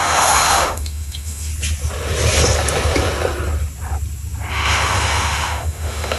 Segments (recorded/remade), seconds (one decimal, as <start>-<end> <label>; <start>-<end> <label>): 0.0-1.5 remade; 1.5-4.5 recorded; 4.5-6.2 remade